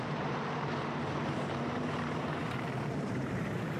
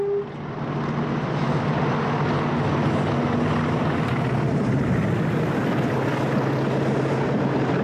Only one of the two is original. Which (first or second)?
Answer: second